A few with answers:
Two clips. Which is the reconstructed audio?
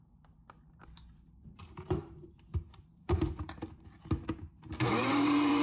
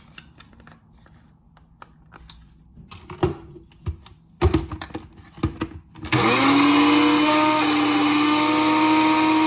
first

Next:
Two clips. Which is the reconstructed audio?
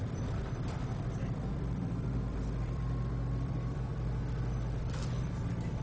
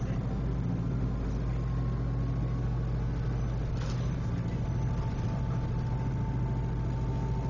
first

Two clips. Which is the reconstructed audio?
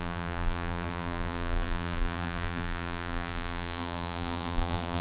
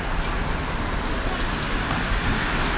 first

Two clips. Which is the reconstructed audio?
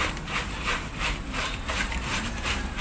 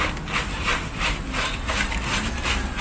first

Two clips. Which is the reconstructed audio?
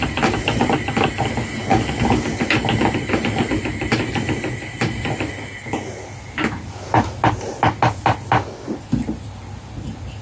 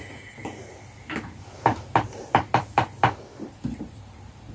second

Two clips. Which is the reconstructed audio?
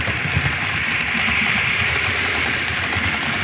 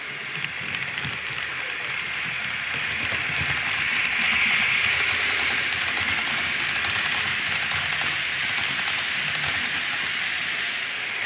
first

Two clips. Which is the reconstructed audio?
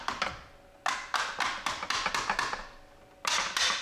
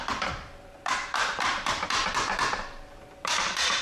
second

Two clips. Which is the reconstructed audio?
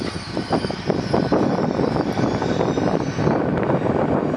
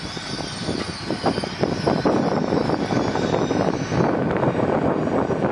first